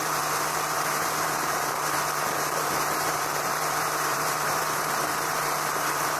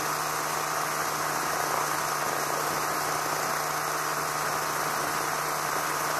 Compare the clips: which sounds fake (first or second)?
first